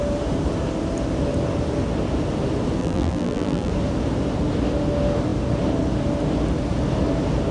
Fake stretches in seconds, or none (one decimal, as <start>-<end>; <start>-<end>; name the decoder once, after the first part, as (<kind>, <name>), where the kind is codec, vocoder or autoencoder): 2.8-3.7 (vocoder, BigVGAN v2)